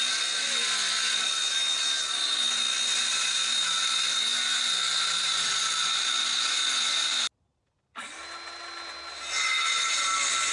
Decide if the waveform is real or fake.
real